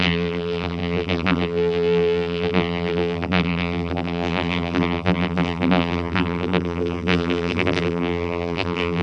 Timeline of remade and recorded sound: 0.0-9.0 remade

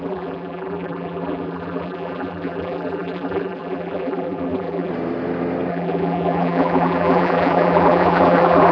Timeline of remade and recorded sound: 0.0-4.9 remade; 4.9-5.7 recorded; 5.7-8.7 remade

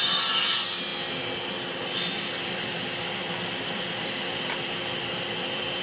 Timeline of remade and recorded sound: 0.0-0.9 remade; 0.9-2.1 recorded; 2.1-5.8 remade

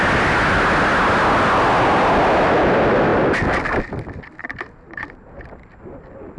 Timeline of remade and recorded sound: 0.0-4.4 recorded; 4.4-5.5 remade; 5.5-6.4 recorded

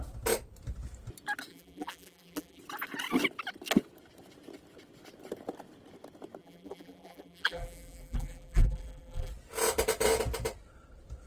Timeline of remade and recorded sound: 0.0-1.5 recorded; 1.5-2.6 remade; 2.6-6.4 recorded; 6.4-9.3 remade; 9.3-11.3 recorded

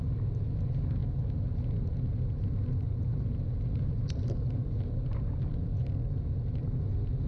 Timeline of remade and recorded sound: 0.0-7.3 recorded

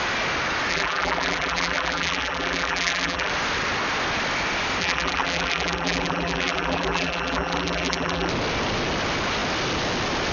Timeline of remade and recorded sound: 0.0-0.7 recorded; 0.7-3.3 remade; 3.3-4.8 recorded; 4.8-8.3 remade; 8.3-10.3 recorded